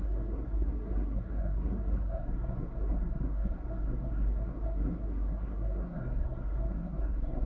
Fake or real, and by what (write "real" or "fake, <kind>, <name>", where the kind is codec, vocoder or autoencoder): fake, codec, SNAC